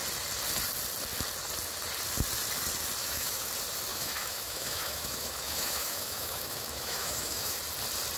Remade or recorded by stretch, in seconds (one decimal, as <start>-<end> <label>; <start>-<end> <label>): 0.0-3.0 recorded; 3.0-3.5 remade; 3.5-3.9 recorded; 3.9-7.6 remade; 7.6-8.2 recorded